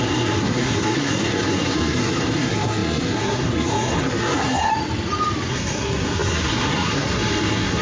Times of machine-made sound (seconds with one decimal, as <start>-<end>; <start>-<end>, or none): 0.0-4.7; 5.5-7.8